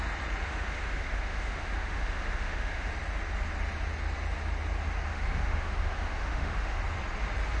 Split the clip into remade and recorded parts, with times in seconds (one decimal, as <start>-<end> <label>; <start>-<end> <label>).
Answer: 0.0-0.4 recorded; 0.4-2.9 remade; 2.9-5.1 recorded; 5.1-6.8 remade; 6.8-7.6 recorded